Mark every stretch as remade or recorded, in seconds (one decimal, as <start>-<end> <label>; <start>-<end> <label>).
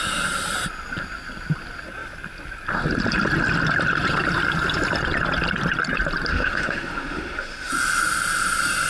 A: 0.0-6.3 recorded; 6.3-7.7 remade; 7.7-8.9 recorded